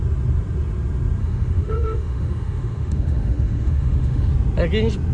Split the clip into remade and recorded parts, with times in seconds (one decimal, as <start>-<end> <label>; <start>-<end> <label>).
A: 0.0-1.2 recorded; 1.2-4.3 remade; 4.3-5.1 recorded

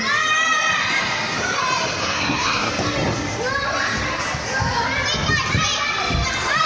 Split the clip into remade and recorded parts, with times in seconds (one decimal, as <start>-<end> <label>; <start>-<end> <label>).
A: 0.0-2.0 recorded; 2.0-2.7 remade; 2.7-6.7 recorded